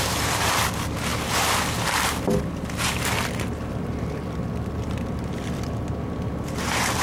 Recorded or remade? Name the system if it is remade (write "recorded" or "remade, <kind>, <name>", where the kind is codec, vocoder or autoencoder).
remade, vocoder, BigVGAN v2